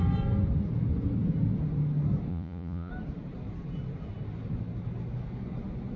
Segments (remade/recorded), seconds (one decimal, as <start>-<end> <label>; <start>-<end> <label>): 0.0-2.3 recorded; 2.3-2.9 remade; 2.9-6.0 recorded